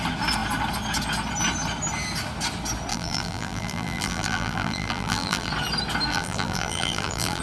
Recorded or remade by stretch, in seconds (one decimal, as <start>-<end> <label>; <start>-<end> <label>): 0.0-2.9 recorded; 2.9-5.5 remade; 5.5-6.1 recorded; 6.1-7.4 remade